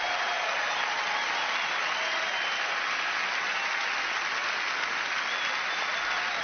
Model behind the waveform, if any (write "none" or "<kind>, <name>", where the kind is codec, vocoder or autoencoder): none